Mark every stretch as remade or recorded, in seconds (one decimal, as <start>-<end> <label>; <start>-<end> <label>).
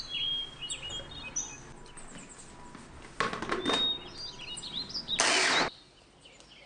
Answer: 0.0-6.7 recorded